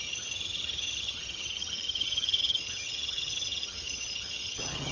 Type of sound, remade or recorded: remade